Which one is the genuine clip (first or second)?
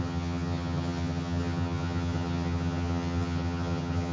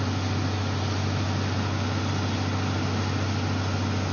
second